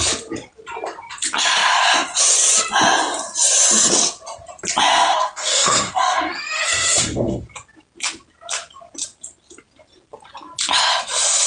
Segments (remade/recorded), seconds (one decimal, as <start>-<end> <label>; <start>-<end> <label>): 0.0-4.9 recorded; 4.9-7.4 remade; 7.4-11.5 recorded